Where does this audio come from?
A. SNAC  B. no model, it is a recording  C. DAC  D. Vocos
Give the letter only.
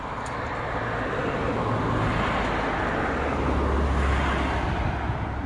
B